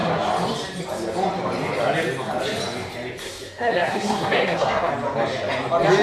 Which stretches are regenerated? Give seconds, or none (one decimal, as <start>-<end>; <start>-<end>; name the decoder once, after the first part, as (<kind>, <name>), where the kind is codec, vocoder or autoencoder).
3.2-4.9 (codec, SNAC)